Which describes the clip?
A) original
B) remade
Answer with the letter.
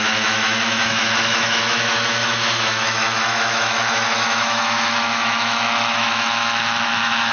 B